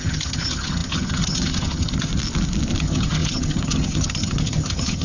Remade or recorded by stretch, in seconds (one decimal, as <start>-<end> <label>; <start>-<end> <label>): 0.0-2.1 remade; 2.1-2.8 recorded; 2.8-5.0 remade